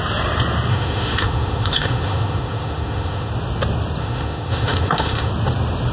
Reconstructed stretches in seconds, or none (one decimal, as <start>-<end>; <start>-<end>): 0.7-3.3; 4.0-5.3